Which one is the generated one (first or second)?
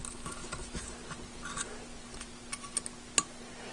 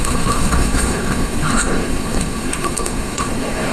second